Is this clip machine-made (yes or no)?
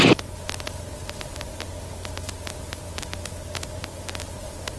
no